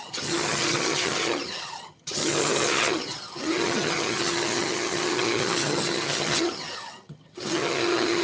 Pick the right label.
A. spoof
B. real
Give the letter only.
A